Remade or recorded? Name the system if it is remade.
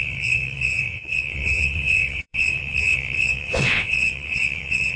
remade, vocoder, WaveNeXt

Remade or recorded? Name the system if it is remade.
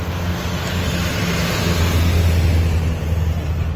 recorded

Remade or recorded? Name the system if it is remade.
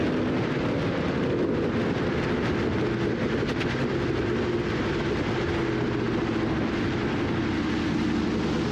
recorded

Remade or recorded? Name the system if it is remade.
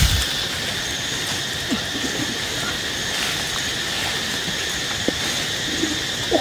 recorded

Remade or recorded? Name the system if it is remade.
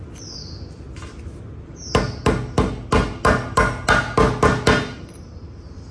recorded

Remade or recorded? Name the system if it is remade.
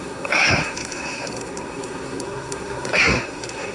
remade, codec, SNAC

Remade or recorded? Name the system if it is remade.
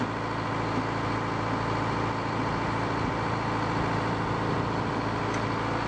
recorded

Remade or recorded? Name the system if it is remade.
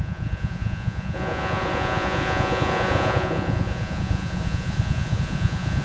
remade, vocoder, Vocos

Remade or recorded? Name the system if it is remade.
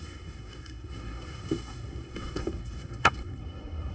remade, codec, SNAC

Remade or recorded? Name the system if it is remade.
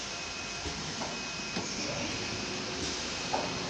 recorded